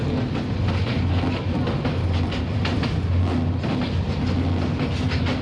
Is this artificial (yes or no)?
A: no